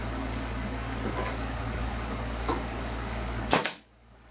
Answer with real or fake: fake